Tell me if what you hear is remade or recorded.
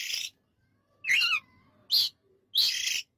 recorded